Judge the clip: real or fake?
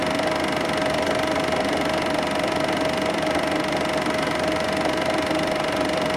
fake